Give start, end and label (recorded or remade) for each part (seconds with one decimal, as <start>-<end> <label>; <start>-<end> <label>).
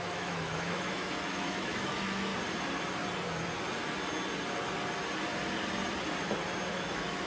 0.0-2.3 remade; 2.3-6.7 recorded; 6.7-7.3 remade